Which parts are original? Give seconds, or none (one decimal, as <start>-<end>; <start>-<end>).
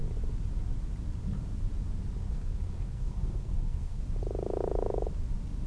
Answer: 0.0-2.2; 4.0-5.7